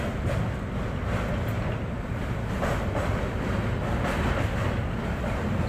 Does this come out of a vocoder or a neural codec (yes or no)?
no